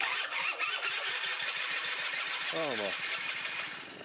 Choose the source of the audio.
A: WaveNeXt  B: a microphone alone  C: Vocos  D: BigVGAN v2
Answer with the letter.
D